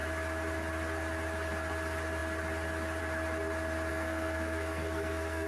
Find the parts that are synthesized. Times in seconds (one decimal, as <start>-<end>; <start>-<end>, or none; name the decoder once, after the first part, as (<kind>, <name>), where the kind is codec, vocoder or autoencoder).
3.9-5.5 (codec, SNAC)